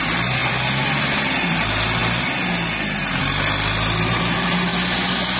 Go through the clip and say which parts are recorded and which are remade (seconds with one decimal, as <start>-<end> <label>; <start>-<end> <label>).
0.0-2.0 remade; 2.0-3.2 recorded; 3.2-4.7 remade; 4.7-5.4 recorded